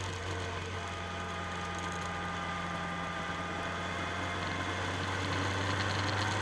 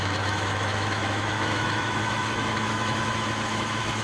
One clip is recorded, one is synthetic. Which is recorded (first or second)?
first